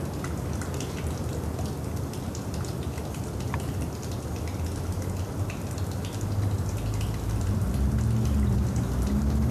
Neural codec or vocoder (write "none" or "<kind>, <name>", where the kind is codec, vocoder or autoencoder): none